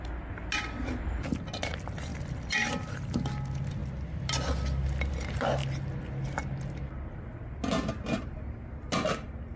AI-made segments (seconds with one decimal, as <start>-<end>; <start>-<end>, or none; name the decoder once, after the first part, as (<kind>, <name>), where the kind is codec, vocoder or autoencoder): 2.1-3.1 (vocoder, BigVGAN v2)